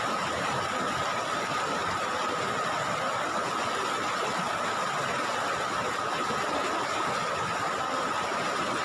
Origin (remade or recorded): recorded